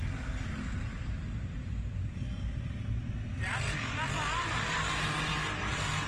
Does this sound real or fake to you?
real